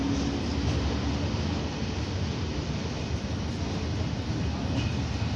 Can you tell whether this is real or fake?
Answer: real